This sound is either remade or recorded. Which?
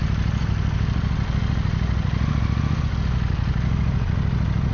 recorded